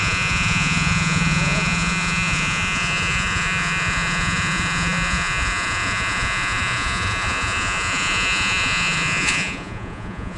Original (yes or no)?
no